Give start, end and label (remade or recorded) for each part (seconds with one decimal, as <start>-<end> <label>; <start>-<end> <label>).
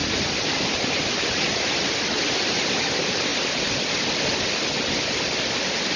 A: 0.0-6.0 recorded